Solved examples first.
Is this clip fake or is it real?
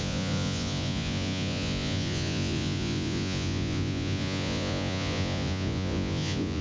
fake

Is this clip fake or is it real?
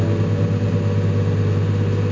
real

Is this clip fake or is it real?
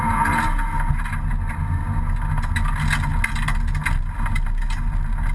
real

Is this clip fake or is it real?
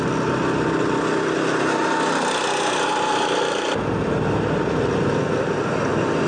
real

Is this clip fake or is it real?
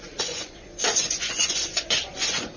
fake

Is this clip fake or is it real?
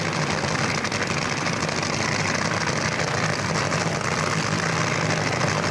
real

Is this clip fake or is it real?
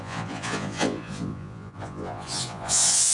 fake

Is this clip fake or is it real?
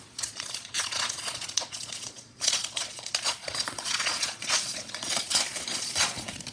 fake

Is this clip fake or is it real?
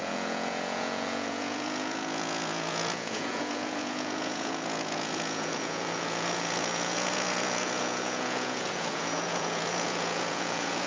fake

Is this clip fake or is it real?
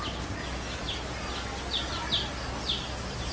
real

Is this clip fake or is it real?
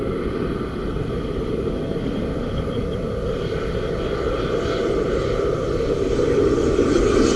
real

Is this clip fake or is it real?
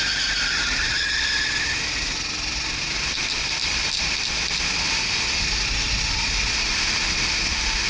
real